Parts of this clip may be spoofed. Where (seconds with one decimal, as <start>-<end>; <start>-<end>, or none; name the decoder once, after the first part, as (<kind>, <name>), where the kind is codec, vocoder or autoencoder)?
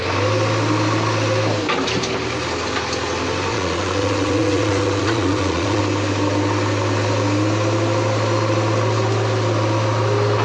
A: 3.5-5.8 (vocoder, Vocos)